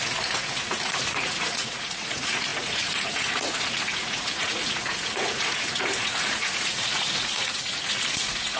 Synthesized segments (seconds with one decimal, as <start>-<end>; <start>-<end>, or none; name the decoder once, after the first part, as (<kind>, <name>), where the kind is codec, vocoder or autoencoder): 0.0-8.6 (vocoder, Vocos)

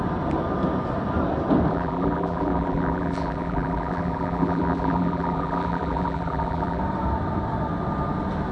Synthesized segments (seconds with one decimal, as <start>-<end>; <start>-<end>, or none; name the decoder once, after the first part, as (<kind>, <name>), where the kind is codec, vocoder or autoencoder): 1.7-6.8 (vocoder, BigVGAN v2)